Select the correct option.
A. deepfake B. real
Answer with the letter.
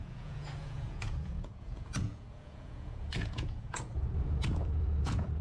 A